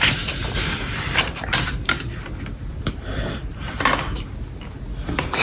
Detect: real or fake real